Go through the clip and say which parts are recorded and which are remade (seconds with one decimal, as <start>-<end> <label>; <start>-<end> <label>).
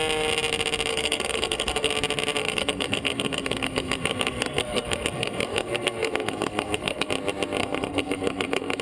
0.0-0.9 recorded; 0.9-1.9 remade; 1.9-2.4 recorded; 2.4-7.1 remade; 7.1-7.6 recorded; 7.6-8.8 remade